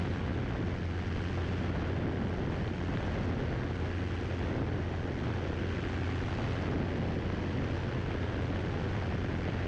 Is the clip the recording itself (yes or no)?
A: yes